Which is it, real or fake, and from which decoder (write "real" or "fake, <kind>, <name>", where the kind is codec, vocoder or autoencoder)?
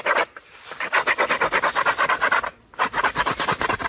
real